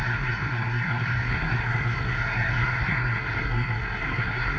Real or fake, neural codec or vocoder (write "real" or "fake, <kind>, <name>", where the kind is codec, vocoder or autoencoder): fake, codec, SNAC